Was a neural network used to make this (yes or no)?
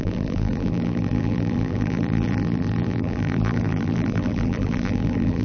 yes